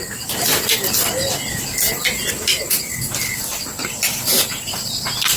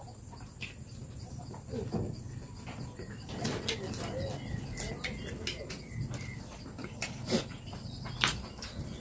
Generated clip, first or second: first